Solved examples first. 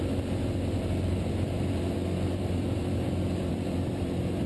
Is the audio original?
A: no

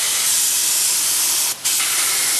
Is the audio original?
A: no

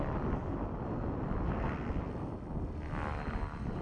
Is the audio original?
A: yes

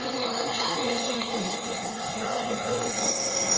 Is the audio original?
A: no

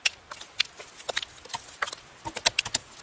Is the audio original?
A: yes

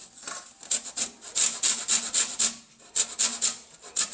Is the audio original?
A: yes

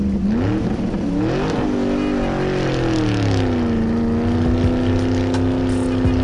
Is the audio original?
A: yes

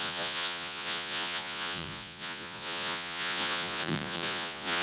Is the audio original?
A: no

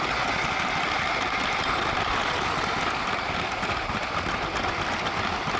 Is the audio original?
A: yes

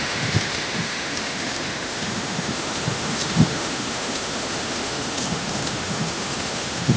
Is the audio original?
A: no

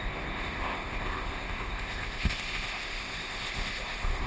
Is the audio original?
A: no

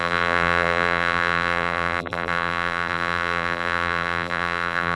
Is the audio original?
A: no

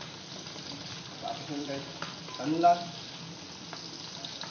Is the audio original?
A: yes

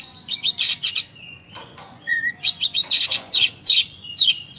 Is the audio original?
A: no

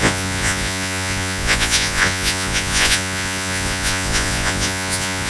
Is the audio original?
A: no